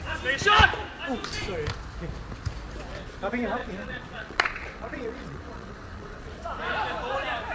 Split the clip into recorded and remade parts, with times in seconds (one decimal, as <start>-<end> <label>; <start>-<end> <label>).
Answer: 0.0-3.6 recorded; 3.6-6.4 remade; 6.4-7.5 recorded